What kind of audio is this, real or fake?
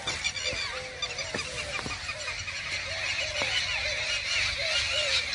real